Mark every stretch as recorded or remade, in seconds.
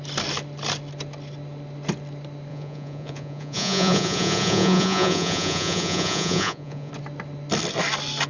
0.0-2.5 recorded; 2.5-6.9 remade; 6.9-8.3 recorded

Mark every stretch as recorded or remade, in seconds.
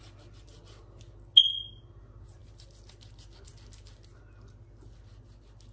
0.0-5.7 recorded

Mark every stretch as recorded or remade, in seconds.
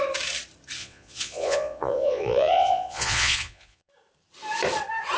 0.0-0.8 recorded; 0.8-3.9 remade; 3.9-5.2 recorded